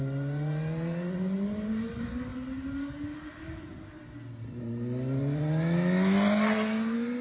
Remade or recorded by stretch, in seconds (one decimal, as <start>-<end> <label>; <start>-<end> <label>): 0.0-7.2 recorded